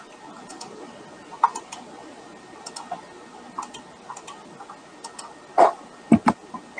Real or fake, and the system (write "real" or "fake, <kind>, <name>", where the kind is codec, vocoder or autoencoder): real